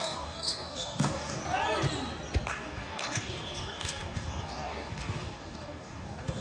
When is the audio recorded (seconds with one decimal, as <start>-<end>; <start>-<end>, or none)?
1.4-2.5